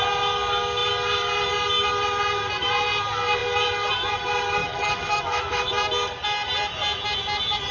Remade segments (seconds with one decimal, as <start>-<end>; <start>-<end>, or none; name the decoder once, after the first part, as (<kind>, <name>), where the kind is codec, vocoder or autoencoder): 4.6-5.7 (autoencoder, DAC-VAE)